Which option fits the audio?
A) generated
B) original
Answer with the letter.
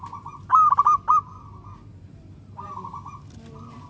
B